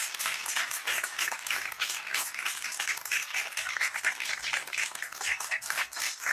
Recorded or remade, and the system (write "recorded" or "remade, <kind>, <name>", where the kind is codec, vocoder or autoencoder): remade, codec, DAC